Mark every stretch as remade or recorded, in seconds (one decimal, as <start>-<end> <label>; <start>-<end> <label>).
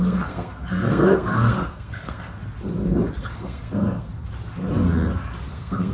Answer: 0.0-2.4 remade; 2.4-3.2 recorded; 3.2-4.1 remade; 4.1-5.5 recorded; 5.5-5.9 remade